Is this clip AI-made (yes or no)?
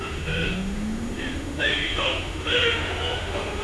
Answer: yes